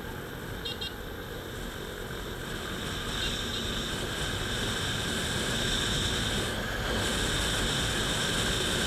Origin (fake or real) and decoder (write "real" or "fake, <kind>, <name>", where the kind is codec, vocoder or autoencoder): real